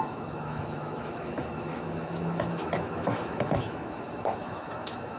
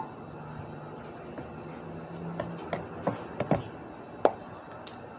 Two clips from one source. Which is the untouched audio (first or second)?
second